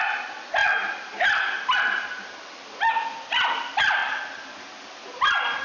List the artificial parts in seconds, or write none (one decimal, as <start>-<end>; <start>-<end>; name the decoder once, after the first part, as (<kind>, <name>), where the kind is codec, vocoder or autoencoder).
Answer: none